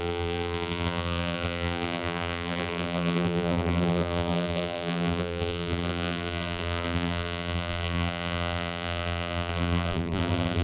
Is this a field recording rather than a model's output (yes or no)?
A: no